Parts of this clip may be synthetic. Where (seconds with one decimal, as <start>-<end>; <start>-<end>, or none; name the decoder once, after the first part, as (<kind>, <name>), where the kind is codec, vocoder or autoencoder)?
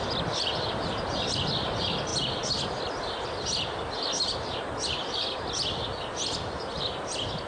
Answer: none